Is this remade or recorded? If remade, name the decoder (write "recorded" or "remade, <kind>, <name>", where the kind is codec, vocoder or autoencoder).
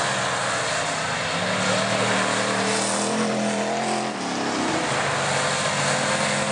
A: recorded